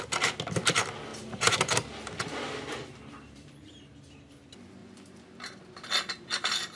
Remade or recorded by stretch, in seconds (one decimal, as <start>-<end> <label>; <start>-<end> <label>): 0.0-1.1 recorded; 1.1-3.8 remade; 3.8-4.8 recorded; 4.8-5.6 remade; 5.6-6.8 recorded